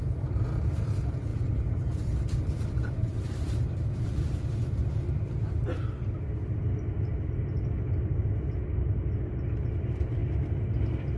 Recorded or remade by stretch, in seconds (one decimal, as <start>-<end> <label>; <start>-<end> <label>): 0.0-5.6 remade; 5.6-9.7 recorded; 9.7-10.2 remade; 10.2-11.2 recorded